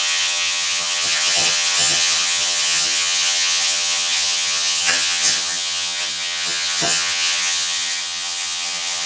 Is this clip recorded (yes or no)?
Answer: no